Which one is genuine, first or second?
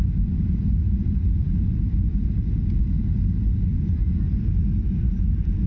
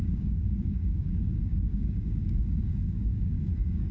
first